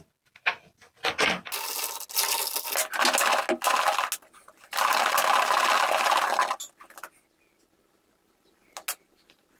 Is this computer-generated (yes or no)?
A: no